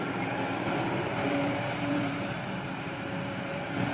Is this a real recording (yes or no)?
no